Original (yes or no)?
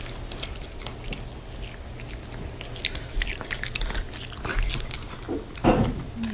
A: yes